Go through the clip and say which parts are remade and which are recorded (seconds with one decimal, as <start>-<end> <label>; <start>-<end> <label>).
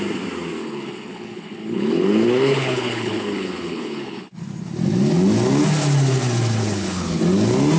0.0-0.6 recorded; 0.6-4.4 remade; 4.4-6.6 recorded; 6.6-7.2 remade; 7.2-7.8 recorded